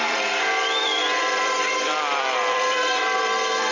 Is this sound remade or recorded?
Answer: remade